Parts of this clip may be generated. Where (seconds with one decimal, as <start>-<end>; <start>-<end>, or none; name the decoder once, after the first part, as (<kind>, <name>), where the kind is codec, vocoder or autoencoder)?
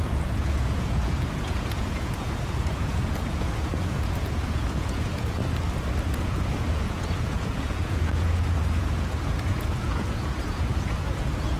0.0-5.4 (vocoder, Vocos); 6.1-11.6